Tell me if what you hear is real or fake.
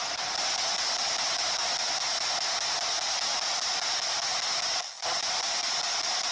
real